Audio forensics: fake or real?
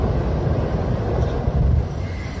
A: real